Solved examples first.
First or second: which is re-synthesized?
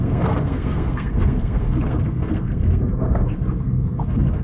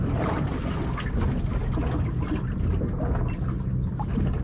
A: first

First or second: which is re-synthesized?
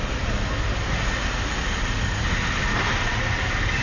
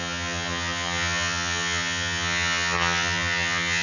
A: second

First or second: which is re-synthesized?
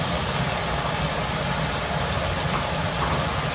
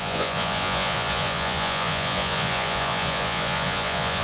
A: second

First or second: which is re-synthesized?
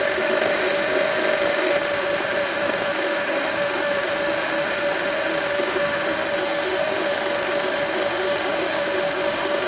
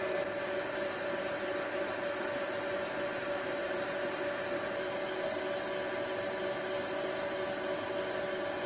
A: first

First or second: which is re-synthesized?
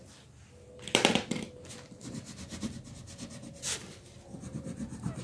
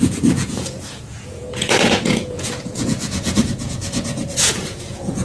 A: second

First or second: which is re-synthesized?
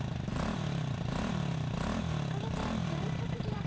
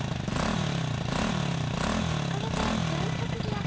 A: first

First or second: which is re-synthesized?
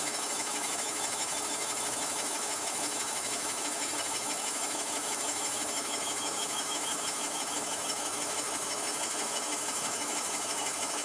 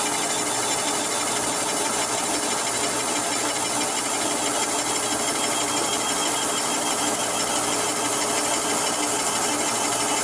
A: first